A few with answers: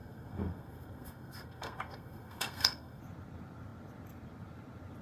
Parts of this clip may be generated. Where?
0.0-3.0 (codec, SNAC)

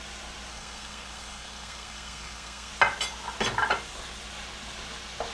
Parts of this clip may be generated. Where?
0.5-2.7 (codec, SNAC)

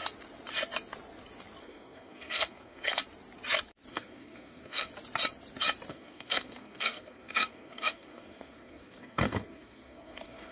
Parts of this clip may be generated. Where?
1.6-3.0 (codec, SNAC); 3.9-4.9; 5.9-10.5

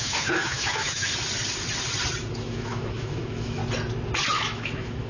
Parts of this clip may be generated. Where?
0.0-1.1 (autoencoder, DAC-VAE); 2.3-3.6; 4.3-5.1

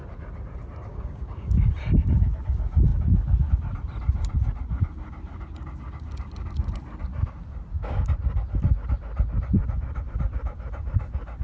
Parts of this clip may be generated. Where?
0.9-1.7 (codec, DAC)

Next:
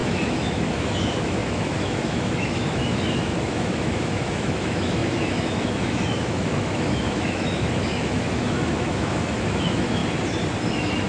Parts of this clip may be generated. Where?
0.0-10.0 (autoencoder, DAC-VAE); 10.7-11.1

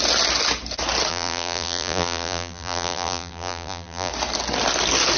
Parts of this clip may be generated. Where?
1.1-4.1 (vocoder, BigVGAN v2)